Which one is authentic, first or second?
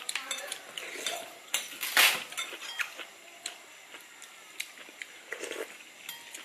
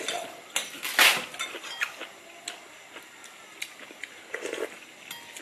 second